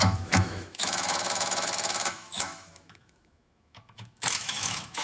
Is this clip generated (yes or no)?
yes